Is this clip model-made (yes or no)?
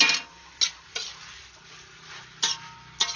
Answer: no